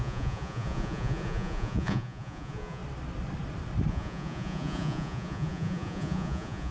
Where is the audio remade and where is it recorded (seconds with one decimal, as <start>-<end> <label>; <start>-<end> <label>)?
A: 0.0-2.8 remade; 2.8-3.9 recorded; 3.9-6.7 remade